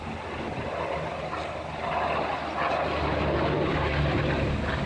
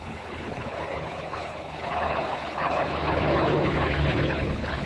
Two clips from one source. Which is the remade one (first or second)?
second